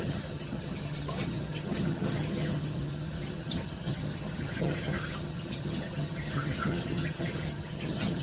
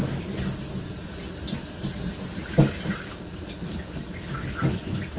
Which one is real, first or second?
second